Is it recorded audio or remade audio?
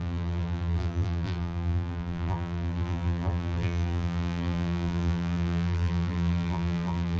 remade